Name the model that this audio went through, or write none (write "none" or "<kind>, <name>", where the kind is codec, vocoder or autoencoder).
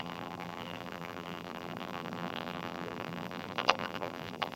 vocoder, BigVGAN v2